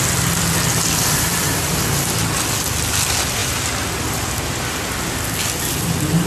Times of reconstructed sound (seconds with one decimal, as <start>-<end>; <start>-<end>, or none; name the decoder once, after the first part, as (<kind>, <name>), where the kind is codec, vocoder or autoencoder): none